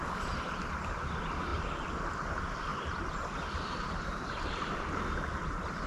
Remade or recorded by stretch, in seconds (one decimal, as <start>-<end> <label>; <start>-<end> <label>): 0.0-2.7 recorded; 2.7-4.7 remade; 4.7-5.9 recorded